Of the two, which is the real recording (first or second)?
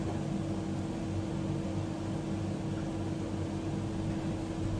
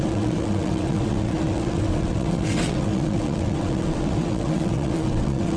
first